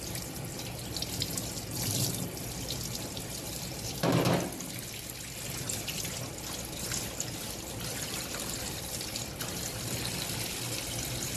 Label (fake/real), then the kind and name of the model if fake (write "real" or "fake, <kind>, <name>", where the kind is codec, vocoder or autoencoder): real